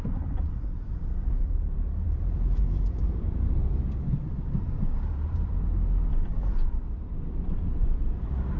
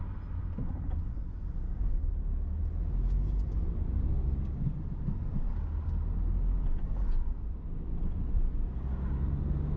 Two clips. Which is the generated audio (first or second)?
first